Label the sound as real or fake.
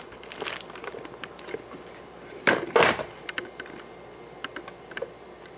real